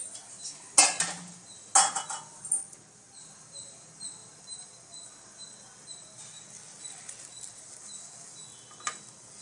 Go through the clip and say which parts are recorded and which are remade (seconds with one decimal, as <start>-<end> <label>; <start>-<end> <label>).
0.0-9.4 recorded